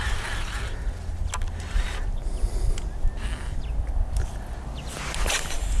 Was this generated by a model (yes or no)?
no